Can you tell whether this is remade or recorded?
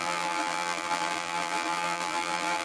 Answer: remade